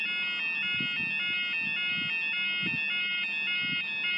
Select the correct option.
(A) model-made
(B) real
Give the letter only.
B